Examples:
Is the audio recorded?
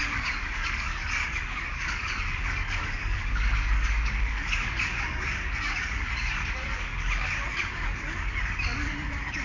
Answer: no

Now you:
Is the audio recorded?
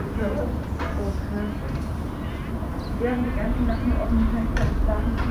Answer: yes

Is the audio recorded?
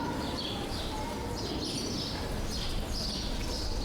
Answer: yes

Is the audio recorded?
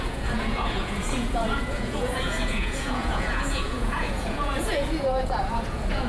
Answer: no